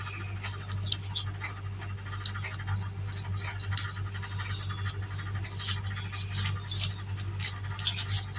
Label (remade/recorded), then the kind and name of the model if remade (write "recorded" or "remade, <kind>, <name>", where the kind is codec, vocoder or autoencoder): recorded